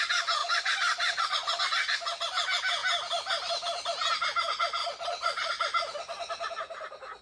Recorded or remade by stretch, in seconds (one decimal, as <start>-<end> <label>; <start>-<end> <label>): 0.0-0.4 recorded; 0.4-1.6 remade; 1.6-4.8 recorded; 4.8-5.5 remade; 5.5-7.2 recorded